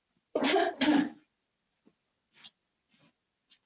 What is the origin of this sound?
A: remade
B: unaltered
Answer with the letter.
A